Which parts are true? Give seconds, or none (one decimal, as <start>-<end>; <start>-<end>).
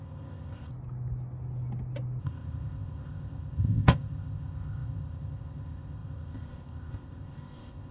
0.7-2.2